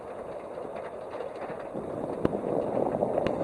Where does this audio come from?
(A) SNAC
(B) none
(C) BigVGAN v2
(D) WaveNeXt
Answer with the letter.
B